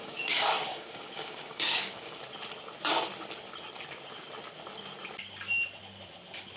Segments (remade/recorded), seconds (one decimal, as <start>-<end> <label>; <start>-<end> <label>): 0.0-2.2 remade; 2.2-6.6 recorded